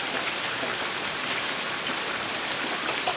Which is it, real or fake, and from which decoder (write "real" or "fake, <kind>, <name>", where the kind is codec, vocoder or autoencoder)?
fake, vocoder, BigVGAN v2